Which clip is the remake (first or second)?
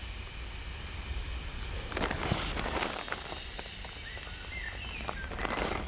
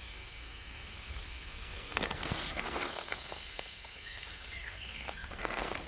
second